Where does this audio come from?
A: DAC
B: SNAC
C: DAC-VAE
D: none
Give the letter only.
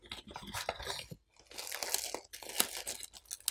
D